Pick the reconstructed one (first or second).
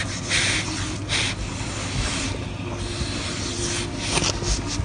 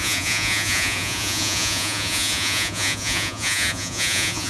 second